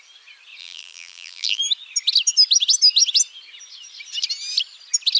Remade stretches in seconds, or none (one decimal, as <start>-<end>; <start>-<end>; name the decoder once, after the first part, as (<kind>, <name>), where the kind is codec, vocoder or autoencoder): 0.6-1.6 (vocoder, BigVGAN v2)